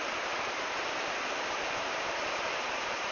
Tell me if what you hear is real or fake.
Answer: fake